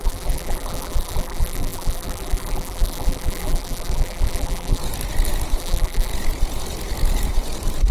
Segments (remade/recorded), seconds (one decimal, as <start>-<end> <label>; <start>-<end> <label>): 0.0-4.8 remade; 4.8-5.6 recorded; 5.6-6.1 remade; 6.1-7.9 recorded